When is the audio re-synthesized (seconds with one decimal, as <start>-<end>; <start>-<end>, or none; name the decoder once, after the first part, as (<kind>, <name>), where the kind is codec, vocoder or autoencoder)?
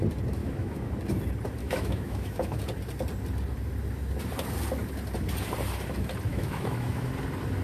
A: 0.4-0.9 (autoencoder, DAC-VAE); 1.6-2.6; 6.3-7.1